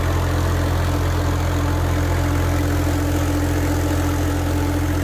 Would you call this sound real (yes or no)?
yes